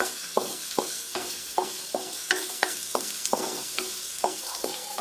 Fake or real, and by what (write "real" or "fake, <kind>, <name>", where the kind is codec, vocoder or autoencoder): fake, codec, SNAC